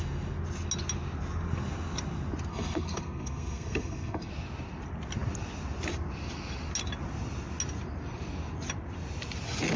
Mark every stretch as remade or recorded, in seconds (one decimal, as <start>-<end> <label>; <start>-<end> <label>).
0.0-2.5 recorded; 2.5-4.3 remade; 4.3-9.8 recorded